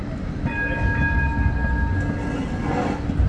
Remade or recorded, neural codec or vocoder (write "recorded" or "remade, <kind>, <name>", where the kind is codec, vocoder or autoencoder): recorded